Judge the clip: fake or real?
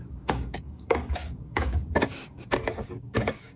fake